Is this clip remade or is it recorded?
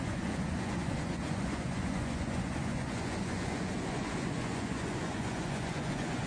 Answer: remade